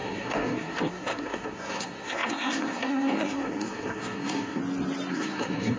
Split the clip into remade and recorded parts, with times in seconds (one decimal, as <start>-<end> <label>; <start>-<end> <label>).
0.0-4.6 remade; 4.6-5.1 recorded; 5.1-5.8 remade